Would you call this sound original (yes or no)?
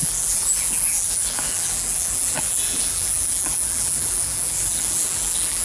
no